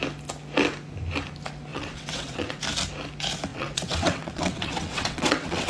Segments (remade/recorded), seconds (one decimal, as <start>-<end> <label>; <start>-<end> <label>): 0.0-1.7 recorded; 1.7-2.6 remade; 2.6-3.5 recorded; 3.5-5.7 remade